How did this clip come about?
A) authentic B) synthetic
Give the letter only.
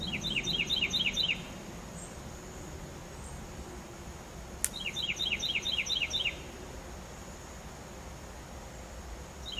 A